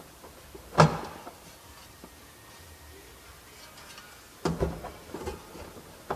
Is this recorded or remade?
recorded